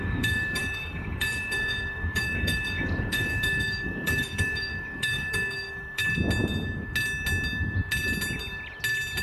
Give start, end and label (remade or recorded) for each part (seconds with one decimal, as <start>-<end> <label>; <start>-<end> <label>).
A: 0.0-6.0 remade; 6.0-9.2 recorded